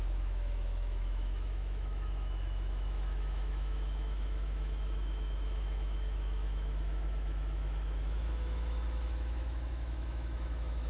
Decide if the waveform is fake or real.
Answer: fake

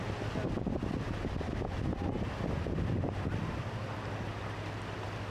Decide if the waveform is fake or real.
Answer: real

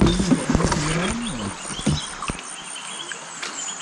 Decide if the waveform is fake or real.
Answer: real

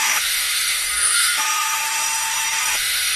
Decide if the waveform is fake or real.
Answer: fake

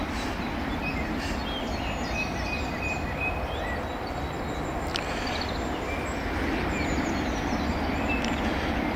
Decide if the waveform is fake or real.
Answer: real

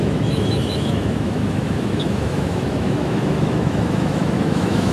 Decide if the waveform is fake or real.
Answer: fake